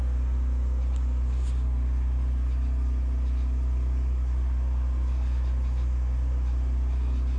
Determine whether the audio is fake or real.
real